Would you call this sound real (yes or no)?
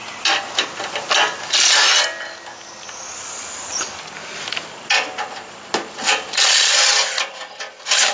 yes